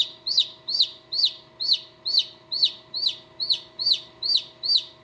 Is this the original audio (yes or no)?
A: yes